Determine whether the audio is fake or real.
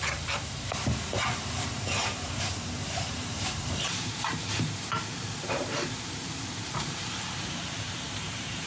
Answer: fake